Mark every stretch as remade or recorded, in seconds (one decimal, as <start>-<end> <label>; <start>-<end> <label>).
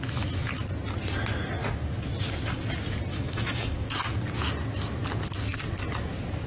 0.0-3.1 recorded; 3.1-3.9 remade; 3.9-6.5 recorded